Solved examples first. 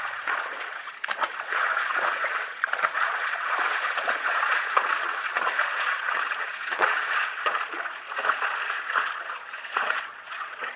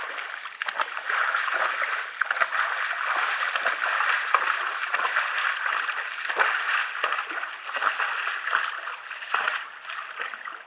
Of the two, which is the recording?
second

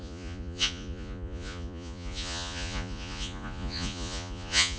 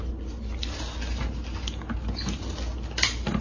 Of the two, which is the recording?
second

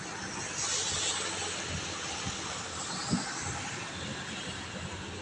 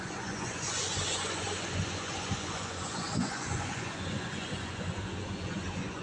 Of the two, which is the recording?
first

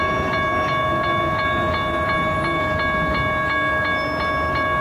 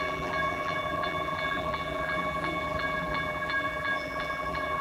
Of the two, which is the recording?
first